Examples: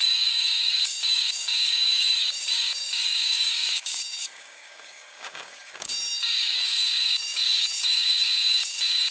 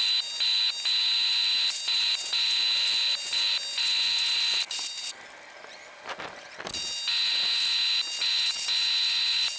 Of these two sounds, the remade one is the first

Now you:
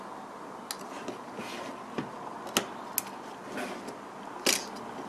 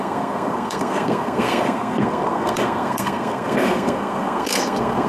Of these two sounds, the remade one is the second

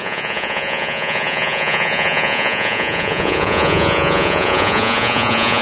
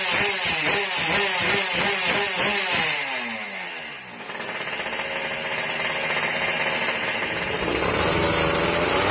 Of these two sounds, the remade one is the first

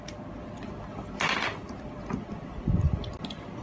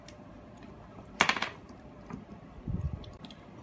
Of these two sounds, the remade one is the second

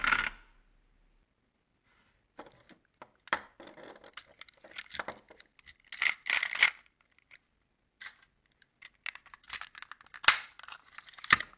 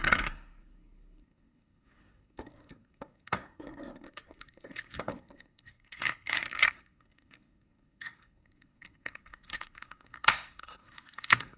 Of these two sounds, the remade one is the second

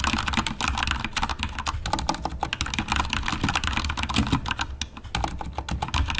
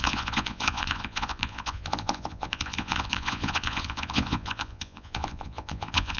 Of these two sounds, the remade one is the second